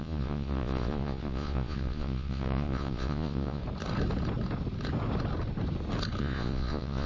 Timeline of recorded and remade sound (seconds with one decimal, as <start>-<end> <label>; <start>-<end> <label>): 0.0-3.6 remade; 3.6-6.2 recorded; 6.2-7.1 remade